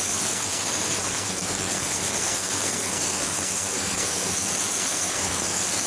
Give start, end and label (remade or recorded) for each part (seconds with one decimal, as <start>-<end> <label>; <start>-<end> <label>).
0.0-5.9 remade